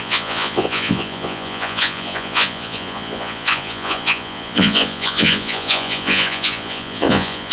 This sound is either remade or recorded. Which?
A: remade